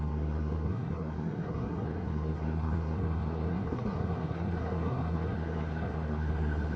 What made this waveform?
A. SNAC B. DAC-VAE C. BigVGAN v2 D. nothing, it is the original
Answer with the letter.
A